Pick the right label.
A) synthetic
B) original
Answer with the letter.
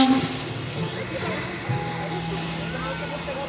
B